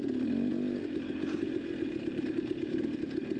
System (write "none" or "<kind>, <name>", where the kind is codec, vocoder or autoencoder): none